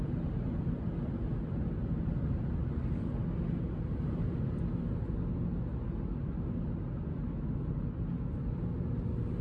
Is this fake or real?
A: real